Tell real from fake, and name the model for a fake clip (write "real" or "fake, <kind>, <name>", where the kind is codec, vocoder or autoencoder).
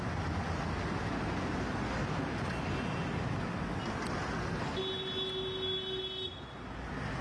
real